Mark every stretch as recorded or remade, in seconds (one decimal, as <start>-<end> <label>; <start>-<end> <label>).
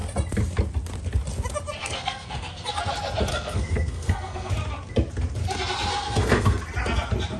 0.0-1.8 recorded; 1.8-2.9 remade; 2.9-3.3 recorded; 3.3-4.5 remade; 4.5-5.9 recorded; 5.9-6.6 remade; 6.6-7.4 recorded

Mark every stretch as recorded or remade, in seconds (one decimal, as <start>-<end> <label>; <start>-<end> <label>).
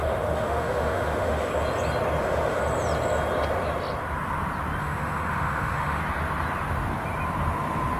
0.0-1.5 remade; 1.5-2.2 recorded; 2.2-2.6 remade; 2.6-4.8 recorded; 4.8-6.0 remade; 6.0-8.0 recorded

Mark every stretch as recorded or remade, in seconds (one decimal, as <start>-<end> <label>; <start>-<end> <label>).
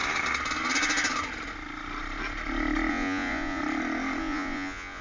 0.0-2.9 recorded; 2.9-3.6 remade; 3.6-4.2 recorded; 4.2-5.0 remade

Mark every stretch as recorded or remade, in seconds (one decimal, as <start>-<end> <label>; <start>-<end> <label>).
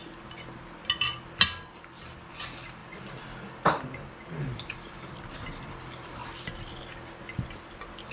0.0-8.1 recorded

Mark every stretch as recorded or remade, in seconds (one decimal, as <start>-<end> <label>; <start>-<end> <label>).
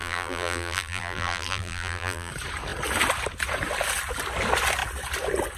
0.0-2.3 remade; 2.3-5.6 recorded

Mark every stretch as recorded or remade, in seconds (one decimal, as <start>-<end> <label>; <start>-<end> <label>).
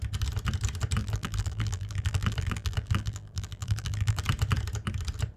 0.0-1.0 recorded; 1.0-4.2 remade; 4.2-5.4 recorded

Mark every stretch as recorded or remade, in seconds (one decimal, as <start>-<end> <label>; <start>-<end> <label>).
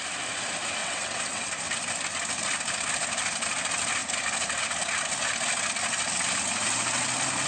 0.0-0.8 recorded; 0.8-1.5 remade; 1.5-7.5 recorded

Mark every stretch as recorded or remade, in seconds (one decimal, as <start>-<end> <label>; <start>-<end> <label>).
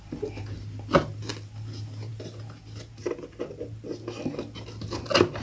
0.0-5.4 recorded